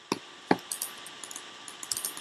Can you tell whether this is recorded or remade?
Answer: recorded